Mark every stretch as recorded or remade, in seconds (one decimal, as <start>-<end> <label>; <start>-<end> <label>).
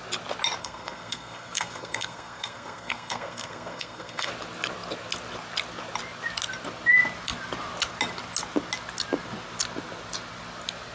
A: 0.0-0.6 recorded; 0.6-4.3 remade; 4.3-10.9 recorded